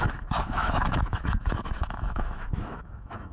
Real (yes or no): no